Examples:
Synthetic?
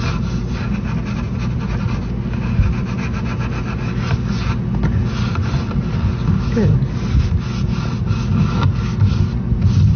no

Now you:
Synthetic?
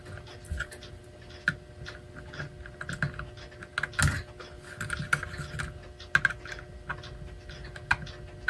no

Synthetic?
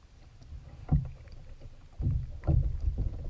no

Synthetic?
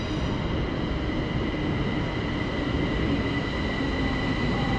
no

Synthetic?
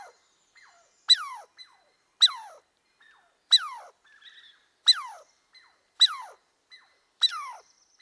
no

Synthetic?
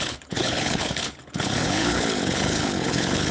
yes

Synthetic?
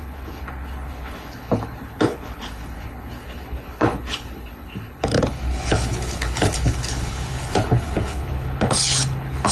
yes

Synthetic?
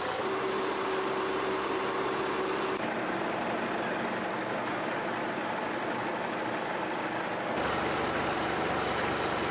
no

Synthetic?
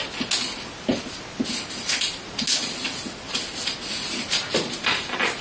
no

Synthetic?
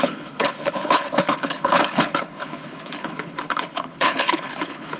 yes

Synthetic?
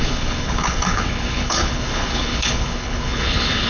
yes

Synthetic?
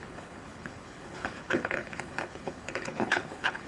yes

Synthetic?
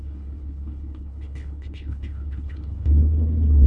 yes